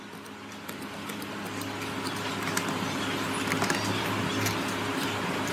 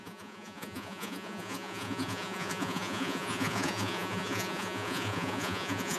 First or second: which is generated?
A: second